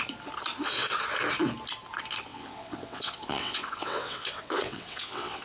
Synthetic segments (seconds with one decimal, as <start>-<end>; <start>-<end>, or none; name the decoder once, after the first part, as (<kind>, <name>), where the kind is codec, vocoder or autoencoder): 2.3-5.4 (vocoder, WaveNeXt)